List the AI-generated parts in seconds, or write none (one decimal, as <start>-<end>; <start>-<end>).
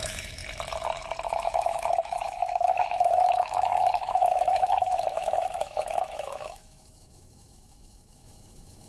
0.0-0.4; 1.3-8.9